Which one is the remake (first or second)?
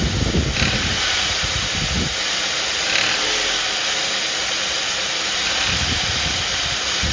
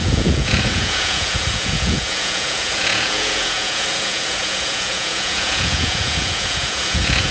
second